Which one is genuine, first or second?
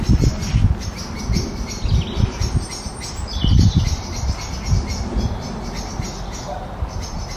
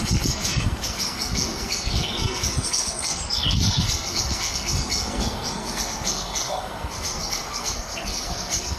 first